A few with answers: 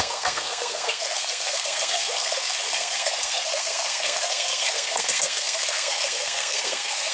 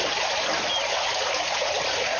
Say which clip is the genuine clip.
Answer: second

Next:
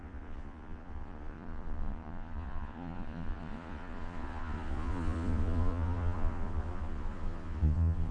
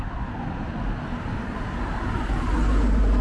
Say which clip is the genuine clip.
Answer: second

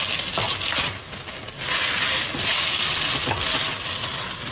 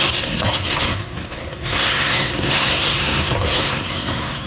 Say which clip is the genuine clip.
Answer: first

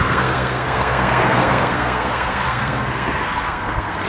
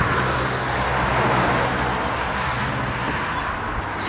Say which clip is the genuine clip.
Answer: second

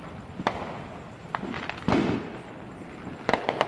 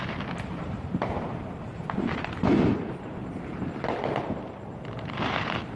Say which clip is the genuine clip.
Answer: first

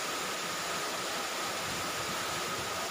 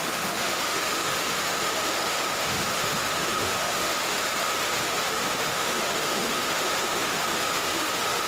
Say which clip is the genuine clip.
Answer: first